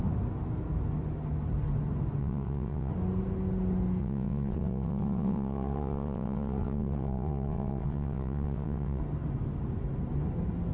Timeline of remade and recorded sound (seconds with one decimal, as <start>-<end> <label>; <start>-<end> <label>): 0.0-2.2 recorded; 2.2-2.9 remade; 2.9-4.0 recorded; 4.0-9.0 remade; 9.0-10.7 recorded